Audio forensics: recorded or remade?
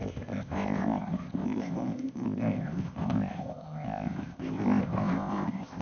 remade